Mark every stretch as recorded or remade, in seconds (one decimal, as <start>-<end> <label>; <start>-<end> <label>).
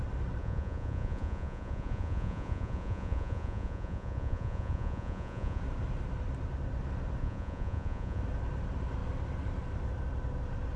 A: 0.0-0.4 recorded; 0.4-5.6 remade; 5.6-7.2 recorded; 7.2-8.2 remade; 8.2-10.8 recorded